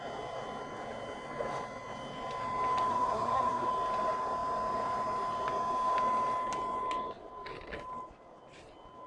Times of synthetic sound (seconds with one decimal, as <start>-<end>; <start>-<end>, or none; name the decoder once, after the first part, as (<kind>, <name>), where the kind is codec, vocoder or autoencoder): 2.9-3.7 (codec, SNAC)